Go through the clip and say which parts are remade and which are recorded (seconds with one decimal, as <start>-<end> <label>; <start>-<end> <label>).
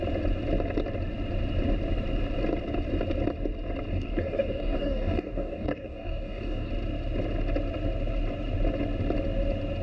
0.0-3.9 recorded; 3.9-6.7 remade; 6.7-9.8 recorded